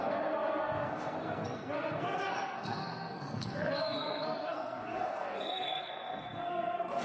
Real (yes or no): no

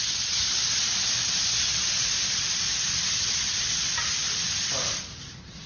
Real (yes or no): yes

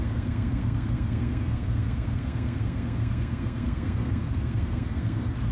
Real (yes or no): no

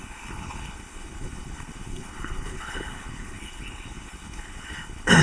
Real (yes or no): no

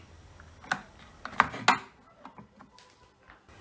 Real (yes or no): yes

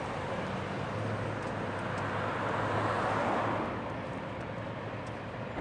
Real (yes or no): yes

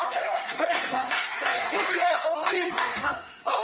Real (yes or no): no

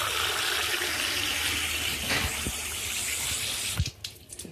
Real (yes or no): yes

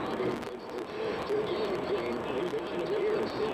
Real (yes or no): yes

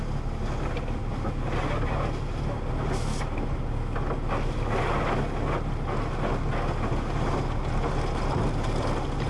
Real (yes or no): yes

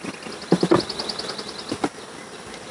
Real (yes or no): yes